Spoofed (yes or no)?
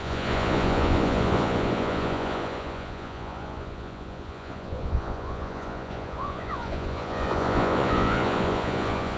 yes